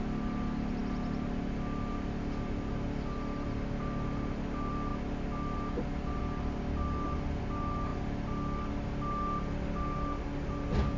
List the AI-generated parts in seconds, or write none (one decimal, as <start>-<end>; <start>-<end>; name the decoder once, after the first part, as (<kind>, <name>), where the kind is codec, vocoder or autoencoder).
none